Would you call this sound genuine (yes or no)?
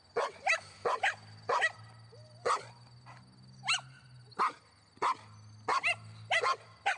yes